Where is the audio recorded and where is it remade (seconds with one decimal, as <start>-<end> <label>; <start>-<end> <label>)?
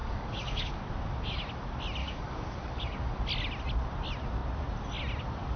0.0-0.8 remade; 0.8-2.0 recorded; 2.0-3.2 remade; 3.2-5.6 recorded